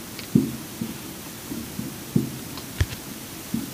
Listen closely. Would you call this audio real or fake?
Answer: real